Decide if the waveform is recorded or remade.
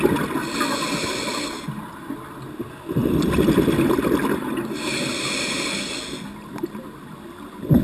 recorded